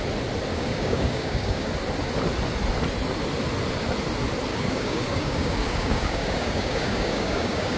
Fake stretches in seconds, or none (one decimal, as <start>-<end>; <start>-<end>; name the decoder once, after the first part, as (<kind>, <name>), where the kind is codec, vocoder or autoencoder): 0.5-1.7 (codec, DAC); 4.5-7.8